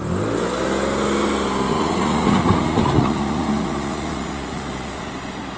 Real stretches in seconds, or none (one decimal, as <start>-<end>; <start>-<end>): 0.0-1.7; 5.1-5.6